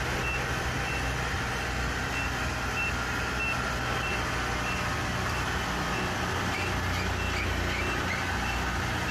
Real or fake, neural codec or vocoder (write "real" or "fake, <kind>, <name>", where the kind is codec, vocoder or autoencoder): real